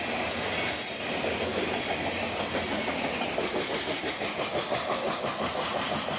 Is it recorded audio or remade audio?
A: recorded